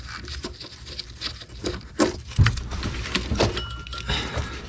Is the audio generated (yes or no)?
no